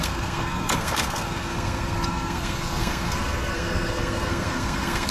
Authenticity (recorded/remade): remade